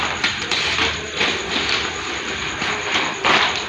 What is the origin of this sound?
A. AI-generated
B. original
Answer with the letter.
A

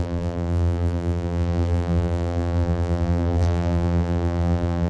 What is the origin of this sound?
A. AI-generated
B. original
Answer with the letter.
A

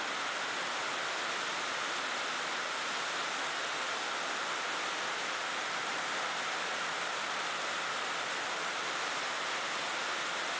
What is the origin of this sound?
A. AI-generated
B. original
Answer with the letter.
B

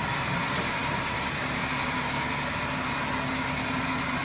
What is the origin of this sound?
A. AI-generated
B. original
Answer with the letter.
B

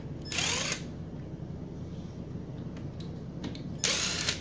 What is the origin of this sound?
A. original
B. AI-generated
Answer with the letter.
A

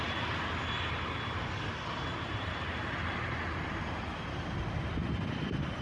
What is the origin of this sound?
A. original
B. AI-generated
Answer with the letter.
A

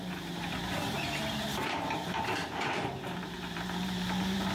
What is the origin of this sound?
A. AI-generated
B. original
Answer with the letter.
A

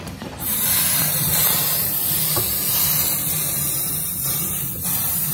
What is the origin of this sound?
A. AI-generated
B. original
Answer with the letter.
A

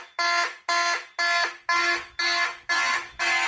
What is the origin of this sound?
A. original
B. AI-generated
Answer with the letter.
A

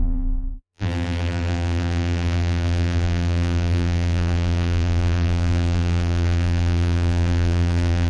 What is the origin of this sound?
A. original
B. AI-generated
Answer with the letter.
B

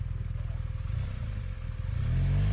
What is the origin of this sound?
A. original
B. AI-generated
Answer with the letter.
A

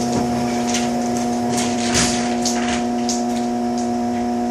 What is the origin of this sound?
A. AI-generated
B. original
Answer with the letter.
A